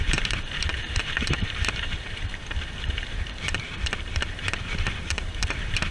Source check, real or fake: fake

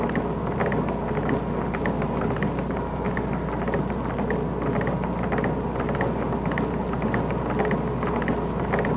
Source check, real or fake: real